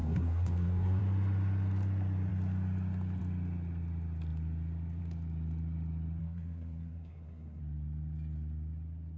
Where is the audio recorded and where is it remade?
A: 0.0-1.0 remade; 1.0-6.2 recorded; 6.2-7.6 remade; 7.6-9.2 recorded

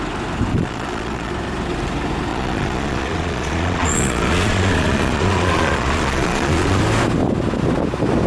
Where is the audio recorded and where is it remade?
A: 0.0-0.5 recorded; 0.5-1.3 remade; 1.3-2.3 recorded; 2.3-6.8 remade; 6.8-8.3 recorded

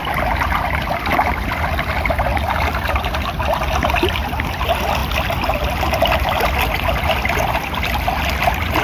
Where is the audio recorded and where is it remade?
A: 0.0-8.8 recorded